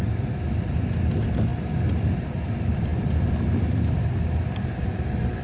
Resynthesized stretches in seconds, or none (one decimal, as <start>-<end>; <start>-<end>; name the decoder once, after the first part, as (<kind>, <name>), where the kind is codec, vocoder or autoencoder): none